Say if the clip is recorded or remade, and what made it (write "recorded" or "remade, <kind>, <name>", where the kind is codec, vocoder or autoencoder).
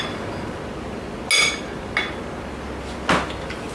recorded